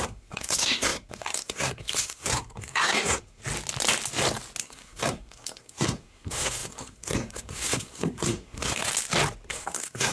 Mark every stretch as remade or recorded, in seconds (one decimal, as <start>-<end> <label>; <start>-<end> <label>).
0.0-3.4 remade; 3.4-4.6 recorded; 4.6-8.9 remade; 8.9-9.5 recorded; 9.5-10.1 remade